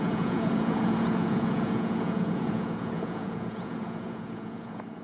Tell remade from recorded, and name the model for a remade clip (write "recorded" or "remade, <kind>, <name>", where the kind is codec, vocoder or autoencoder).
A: remade, vocoder, Vocos